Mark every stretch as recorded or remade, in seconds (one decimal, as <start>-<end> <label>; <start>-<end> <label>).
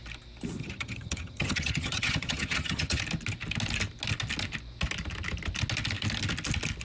0.0-0.6 recorded; 0.6-3.0 remade; 3.0-6.8 recorded